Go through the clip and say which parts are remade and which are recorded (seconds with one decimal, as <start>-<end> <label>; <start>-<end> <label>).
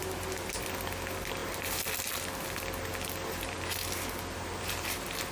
0.0-5.3 recorded